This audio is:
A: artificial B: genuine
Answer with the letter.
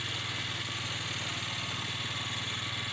B